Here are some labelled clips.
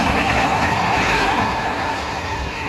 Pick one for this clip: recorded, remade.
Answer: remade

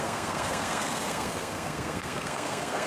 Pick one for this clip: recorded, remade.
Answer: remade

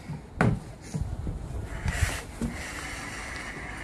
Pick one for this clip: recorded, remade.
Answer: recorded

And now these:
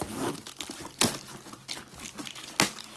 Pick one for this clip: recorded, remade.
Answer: recorded